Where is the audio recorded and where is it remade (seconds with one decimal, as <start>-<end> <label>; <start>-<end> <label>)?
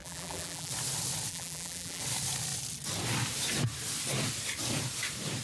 0.0-0.7 remade; 0.7-1.3 recorded; 1.3-2.0 remade; 2.0-5.4 recorded